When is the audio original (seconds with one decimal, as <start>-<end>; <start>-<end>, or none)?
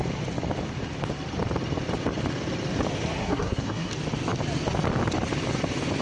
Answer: 0.0-3.2; 3.9-6.0